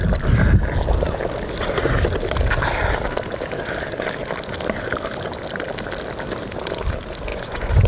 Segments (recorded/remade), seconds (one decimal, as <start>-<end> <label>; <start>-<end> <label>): 0.0-7.3 recorded; 7.3-7.9 remade